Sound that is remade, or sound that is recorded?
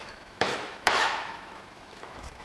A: remade